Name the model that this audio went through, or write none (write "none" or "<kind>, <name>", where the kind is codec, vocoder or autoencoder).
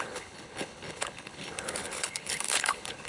codec, HILCodec